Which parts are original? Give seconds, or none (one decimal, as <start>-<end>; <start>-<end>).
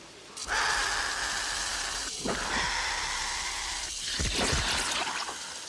0.0-5.7